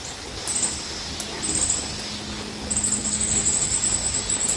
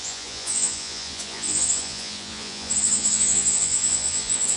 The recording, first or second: first